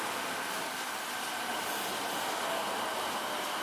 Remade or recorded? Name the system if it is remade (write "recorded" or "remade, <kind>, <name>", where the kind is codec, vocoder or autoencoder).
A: recorded